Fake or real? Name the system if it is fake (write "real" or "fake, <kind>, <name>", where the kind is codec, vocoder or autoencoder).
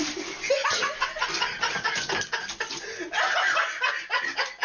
real